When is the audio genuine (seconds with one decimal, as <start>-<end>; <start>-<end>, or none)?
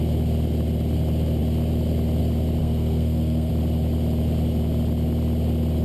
0.0-2.6; 3.5-5.8